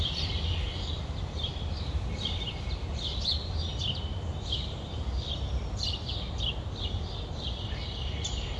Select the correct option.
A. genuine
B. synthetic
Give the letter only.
B